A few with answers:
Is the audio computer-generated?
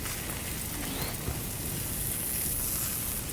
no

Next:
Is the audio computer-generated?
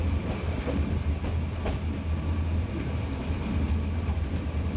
no